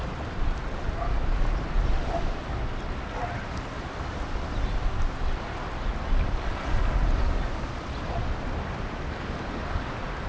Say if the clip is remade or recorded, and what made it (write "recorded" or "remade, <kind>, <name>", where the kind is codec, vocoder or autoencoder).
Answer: recorded